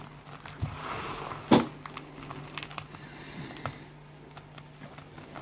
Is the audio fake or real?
real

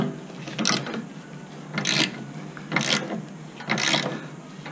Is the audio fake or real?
real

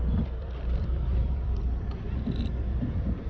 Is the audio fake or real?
fake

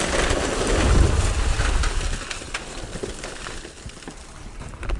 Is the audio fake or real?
real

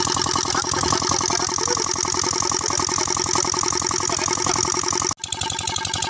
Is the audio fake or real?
real